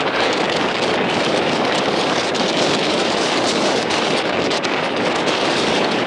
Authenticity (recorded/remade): remade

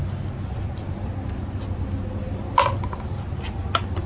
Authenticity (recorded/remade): recorded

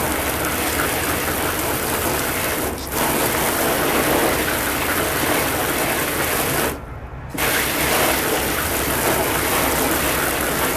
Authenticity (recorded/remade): recorded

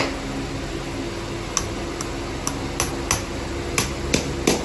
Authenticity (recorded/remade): recorded